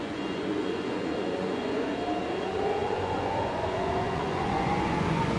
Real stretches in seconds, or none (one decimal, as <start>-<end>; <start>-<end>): 1.9-2.4